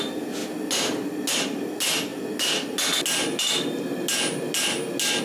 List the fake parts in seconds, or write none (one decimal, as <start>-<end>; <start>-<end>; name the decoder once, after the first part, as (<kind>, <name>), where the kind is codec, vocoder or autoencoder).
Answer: none